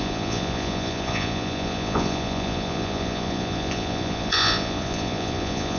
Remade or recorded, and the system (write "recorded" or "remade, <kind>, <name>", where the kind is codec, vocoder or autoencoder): remade, vocoder, Vocos